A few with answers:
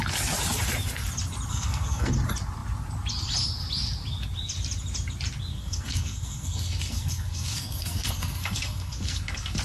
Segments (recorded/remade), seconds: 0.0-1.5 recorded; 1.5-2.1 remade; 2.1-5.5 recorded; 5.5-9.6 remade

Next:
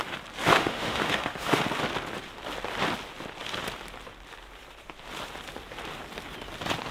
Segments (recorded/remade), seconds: 0.0-0.5 recorded; 0.5-1.6 remade; 1.6-6.9 recorded

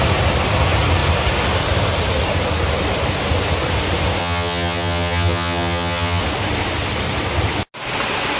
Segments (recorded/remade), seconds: 0.0-4.2 recorded; 4.2-6.2 remade; 6.2-8.4 recorded